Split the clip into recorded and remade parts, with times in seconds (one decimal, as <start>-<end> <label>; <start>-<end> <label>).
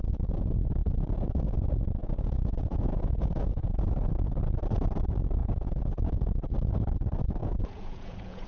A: 0.0-2.0 recorded; 2.0-4.1 remade; 4.1-5.4 recorded; 5.4-5.9 remade; 5.9-7.4 recorded; 7.4-8.5 remade